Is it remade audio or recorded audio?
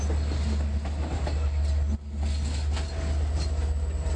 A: recorded